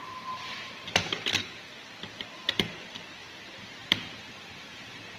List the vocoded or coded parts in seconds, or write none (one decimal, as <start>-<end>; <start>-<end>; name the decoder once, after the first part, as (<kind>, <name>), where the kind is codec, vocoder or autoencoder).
0.0-1.7 (vocoder, BigVGAN v2); 3.4-5.2